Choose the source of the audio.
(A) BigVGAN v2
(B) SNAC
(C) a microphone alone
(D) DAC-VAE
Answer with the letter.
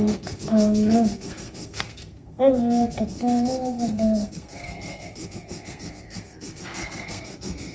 B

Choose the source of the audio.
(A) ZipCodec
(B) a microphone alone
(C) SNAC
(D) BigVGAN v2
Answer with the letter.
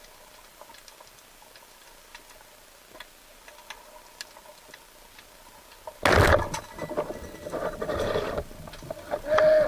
B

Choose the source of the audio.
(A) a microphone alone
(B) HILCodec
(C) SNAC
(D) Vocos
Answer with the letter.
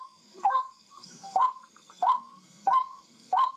C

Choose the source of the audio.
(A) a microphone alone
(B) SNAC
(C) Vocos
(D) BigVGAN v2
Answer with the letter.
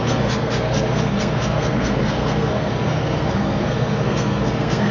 B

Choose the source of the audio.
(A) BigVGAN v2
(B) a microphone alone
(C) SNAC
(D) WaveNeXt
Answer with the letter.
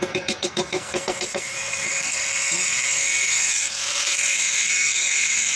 C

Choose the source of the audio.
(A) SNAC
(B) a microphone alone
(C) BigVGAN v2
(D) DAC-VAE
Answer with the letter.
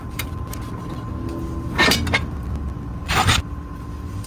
B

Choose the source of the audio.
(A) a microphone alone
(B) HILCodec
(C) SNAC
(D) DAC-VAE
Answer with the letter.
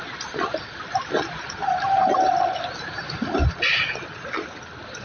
A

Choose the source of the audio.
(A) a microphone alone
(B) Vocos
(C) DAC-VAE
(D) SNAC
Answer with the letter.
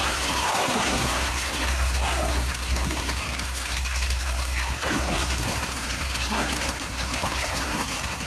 D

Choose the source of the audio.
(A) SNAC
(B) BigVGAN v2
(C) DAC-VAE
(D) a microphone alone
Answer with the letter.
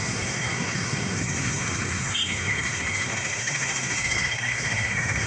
A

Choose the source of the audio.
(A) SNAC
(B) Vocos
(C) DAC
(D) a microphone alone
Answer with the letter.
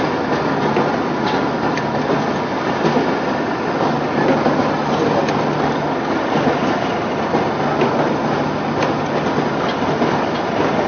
D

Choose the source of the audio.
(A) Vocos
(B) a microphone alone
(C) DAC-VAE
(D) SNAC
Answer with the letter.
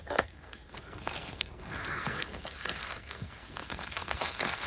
D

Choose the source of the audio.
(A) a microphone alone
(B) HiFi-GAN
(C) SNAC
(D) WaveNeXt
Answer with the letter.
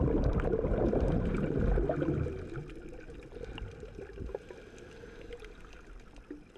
A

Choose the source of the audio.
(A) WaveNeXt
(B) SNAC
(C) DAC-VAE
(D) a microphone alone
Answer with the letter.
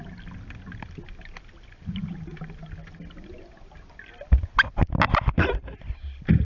D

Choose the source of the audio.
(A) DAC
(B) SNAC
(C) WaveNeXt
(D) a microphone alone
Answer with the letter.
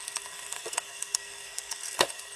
B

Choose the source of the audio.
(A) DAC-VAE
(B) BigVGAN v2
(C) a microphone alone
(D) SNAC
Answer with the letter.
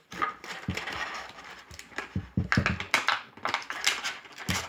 C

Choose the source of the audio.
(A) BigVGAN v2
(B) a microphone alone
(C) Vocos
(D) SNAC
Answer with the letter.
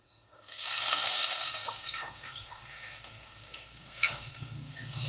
D